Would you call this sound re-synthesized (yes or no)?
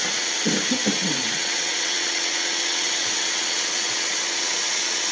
yes